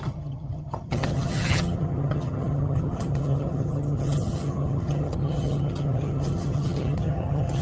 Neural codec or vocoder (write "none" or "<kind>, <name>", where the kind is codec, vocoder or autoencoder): vocoder, HiFi-GAN